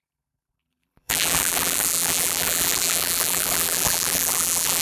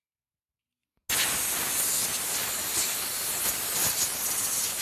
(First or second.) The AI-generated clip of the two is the first